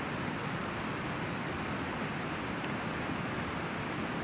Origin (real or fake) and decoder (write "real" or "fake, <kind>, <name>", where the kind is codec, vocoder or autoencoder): real